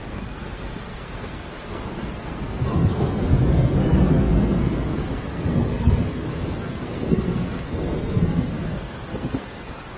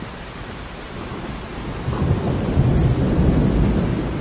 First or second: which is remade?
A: first